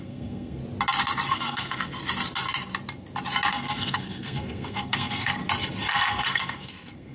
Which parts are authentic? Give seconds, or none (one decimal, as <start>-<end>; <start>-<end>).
0.6-1.3; 2.0-3.5; 5.4-5.9